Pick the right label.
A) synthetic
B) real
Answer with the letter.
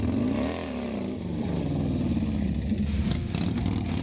B